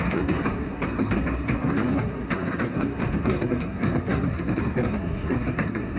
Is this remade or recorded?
remade